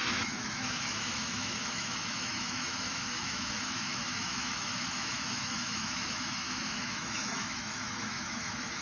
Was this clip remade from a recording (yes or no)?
yes